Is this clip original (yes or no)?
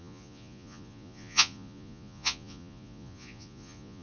no